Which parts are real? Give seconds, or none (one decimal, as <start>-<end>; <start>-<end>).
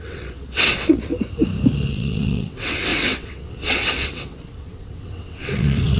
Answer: 1.1-1.9